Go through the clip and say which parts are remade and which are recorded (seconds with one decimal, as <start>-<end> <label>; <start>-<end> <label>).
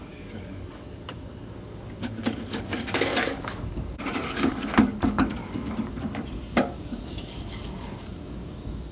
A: 0.0-8.9 remade